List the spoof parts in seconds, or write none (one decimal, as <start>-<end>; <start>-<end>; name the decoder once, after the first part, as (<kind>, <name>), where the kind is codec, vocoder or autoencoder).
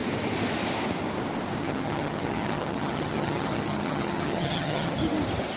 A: 1.6-5.0 (vocoder, HiFi-GAN)